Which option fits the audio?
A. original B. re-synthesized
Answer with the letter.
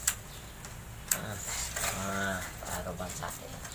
A